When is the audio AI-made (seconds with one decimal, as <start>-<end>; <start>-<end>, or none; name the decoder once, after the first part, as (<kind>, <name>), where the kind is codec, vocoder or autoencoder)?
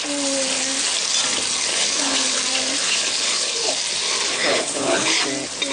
1.7-2.4 (codec, HILCodec); 2.8-3.7; 4.3-5.2